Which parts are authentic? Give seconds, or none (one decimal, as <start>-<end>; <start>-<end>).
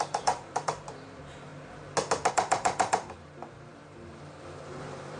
1.5-2.3